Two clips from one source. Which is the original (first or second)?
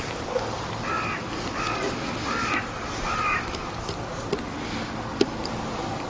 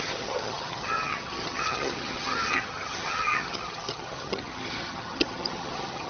first